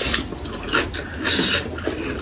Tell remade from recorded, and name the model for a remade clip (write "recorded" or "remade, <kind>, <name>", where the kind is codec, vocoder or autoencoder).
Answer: recorded